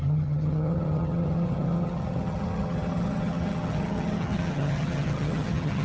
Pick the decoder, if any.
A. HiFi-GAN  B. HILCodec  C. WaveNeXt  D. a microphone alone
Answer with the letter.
A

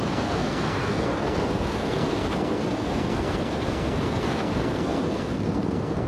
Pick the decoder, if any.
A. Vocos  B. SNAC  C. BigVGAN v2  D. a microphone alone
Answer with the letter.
B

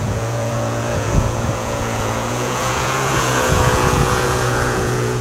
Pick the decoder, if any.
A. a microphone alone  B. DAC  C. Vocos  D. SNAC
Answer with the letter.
C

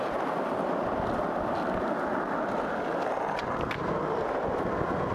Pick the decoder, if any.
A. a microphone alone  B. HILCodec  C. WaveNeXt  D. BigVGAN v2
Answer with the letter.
A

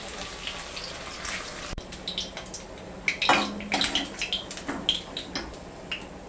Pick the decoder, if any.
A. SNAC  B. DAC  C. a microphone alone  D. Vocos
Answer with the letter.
C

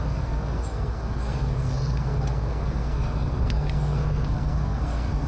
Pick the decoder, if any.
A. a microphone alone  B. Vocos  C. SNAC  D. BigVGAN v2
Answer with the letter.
C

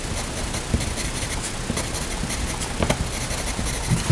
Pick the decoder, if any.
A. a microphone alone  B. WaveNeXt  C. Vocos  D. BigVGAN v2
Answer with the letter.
A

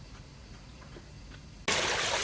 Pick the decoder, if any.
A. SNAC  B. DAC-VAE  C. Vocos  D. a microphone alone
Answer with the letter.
D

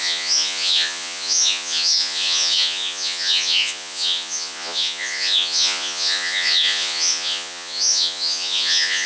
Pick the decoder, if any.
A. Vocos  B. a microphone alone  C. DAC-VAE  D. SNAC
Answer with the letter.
A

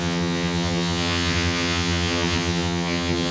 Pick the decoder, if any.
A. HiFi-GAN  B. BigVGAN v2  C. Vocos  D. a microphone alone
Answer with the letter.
A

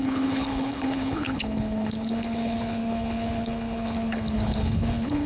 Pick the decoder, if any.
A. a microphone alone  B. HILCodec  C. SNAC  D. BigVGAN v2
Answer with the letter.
B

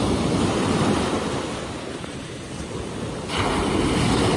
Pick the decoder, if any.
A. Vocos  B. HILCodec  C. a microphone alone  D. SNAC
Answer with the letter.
C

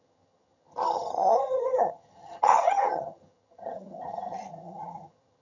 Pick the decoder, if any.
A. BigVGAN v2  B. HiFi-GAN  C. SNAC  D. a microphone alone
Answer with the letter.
B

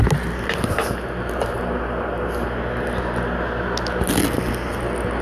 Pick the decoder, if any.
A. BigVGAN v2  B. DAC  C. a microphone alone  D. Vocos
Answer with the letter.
C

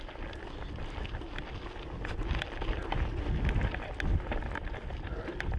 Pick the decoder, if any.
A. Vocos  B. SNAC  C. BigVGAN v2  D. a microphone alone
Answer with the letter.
D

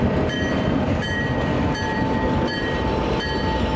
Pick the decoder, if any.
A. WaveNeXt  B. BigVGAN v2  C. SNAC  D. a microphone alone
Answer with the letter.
B